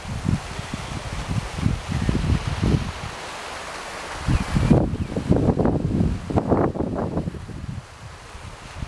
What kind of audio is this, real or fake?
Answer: real